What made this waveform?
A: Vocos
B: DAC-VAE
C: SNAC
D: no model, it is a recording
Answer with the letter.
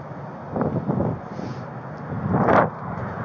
D